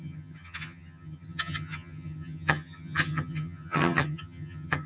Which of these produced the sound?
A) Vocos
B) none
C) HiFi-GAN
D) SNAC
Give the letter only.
C